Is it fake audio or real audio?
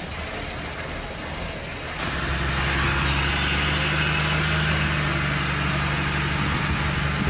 real